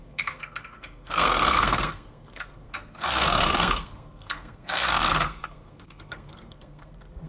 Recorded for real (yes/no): no